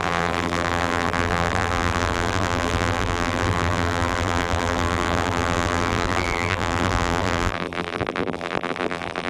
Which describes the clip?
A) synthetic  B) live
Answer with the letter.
A